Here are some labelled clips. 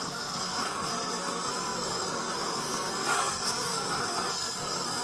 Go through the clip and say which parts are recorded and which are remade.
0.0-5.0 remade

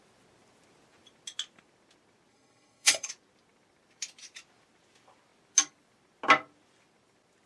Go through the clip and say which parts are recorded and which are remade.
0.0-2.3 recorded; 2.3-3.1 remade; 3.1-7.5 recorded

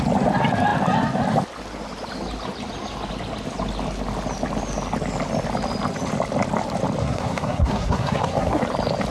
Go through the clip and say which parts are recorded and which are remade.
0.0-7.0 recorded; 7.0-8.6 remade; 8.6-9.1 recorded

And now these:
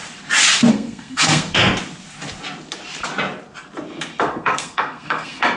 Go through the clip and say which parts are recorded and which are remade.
0.0-0.7 recorded; 0.7-1.6 remade; 1.6-4.2 recorded; 4.2-5.6 remade

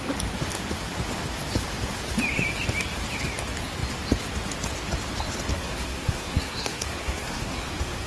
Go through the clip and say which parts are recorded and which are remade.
0.0-5.5 recorded; 5.5-8.1 remade

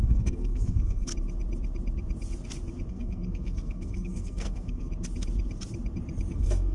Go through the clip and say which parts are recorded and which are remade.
0.0-1.1 remade; 1.1-2.9 recorded; 2.9-4.9 remade; 4.9-6.3 recorded; 6.3-6.7 remade